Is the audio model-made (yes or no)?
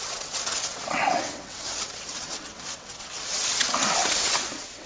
yes